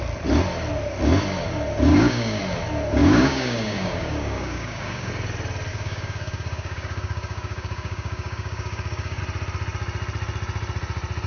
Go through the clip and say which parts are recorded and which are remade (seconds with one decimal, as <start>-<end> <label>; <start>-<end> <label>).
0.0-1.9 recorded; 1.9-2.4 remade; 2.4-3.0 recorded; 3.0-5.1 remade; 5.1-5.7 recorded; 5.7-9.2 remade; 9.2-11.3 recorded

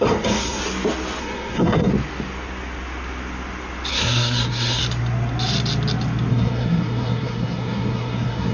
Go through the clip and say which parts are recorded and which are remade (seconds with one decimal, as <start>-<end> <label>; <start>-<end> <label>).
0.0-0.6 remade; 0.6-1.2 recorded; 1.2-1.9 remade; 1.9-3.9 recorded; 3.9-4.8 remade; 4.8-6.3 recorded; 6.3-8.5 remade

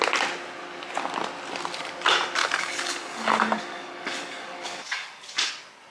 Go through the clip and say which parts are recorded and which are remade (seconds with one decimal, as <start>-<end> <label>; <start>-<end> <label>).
0.0-2.4 recorded; 2.4-5.5 remade; 5.5-5.9 recorded